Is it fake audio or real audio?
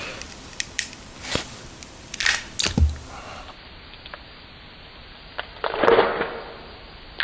real